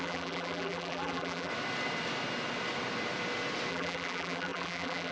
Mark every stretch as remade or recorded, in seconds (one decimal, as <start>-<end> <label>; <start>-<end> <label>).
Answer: 0.0-1.5 remade; 1.5-3.7 recorded; 3.7-5.1 remade